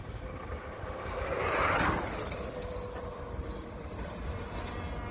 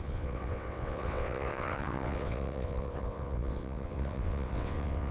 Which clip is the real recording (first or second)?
first